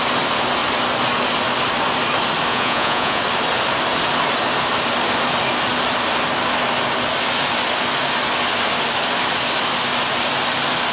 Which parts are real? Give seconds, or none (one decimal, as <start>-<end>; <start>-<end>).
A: 0.0-2.5; 3.2-10.9